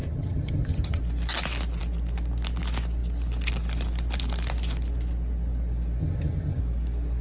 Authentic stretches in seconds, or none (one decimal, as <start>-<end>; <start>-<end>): 1.0-6.0; 6.6-7.2